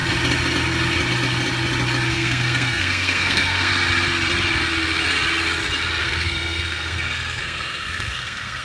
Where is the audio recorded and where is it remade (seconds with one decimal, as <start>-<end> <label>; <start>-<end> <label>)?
0.0-2.1 recorded; 2.1-3.7 remade; 3.7-6.0 recorded; 6.0-8.6 remade